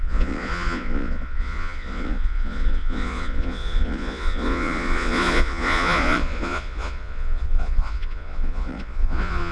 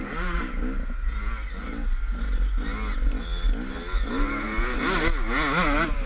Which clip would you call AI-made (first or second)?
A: first